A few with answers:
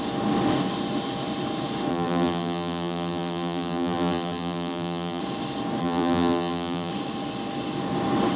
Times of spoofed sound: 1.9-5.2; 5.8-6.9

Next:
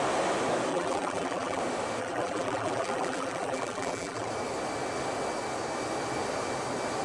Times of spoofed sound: 0.7-1.6; 2.0-4.3

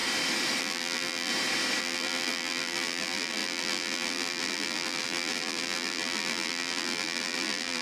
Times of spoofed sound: 0.6-1.3; 1.8-7.8

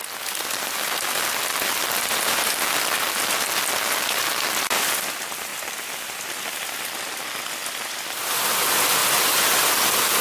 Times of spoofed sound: 2.1-2.8

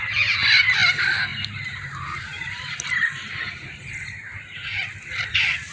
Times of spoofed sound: 1.3-2.9